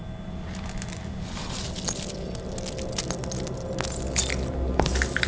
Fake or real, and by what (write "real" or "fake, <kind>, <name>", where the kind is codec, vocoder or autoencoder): real